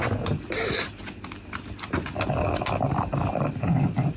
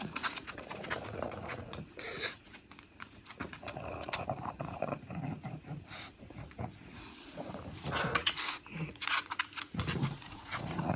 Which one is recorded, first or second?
first